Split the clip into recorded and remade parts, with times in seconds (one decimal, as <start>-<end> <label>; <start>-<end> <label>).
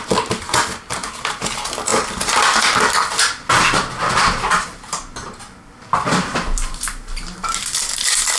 0.0-8.4 recorded